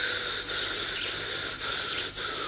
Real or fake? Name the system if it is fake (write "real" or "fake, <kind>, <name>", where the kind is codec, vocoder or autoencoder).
real